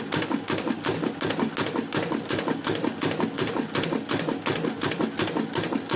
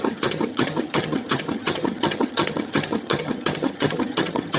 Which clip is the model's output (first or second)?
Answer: second